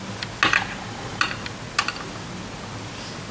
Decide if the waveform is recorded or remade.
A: recorded